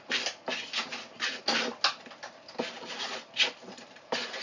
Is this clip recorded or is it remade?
recorded